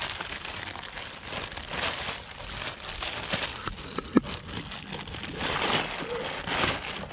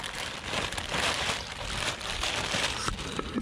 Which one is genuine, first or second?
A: first